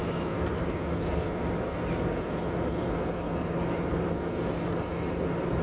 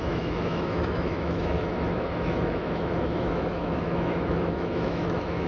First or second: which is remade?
second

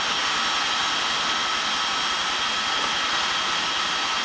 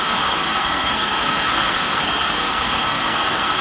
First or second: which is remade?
second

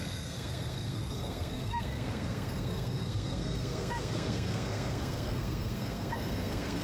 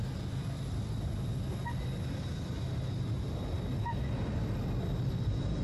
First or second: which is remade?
first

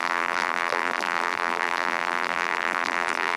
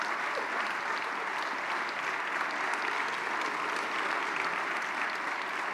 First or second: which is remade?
first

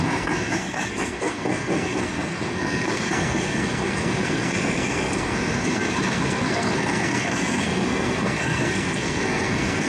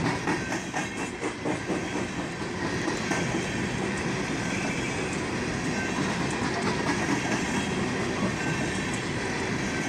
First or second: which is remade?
first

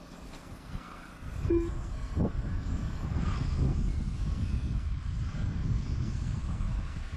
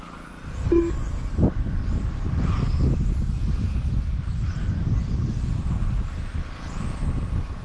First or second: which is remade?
first